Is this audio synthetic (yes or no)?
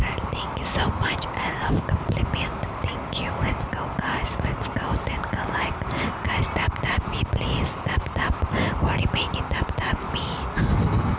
no